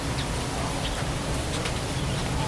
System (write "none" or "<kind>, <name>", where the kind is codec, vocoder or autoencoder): none